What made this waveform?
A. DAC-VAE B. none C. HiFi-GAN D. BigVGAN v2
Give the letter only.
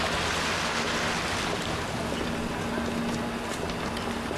B